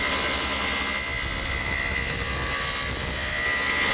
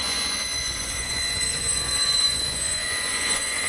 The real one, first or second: first